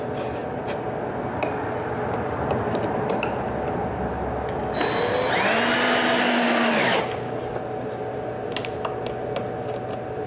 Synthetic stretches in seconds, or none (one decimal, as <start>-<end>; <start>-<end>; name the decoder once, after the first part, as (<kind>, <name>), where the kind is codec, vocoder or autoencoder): 6.2-7.6 (codec, DAC)